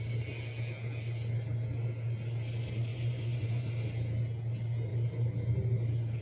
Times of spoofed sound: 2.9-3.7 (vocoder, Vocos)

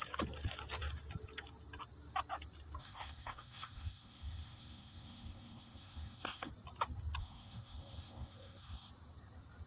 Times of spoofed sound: 2.8-6.5 (codec, SNAC); 7.2-8.9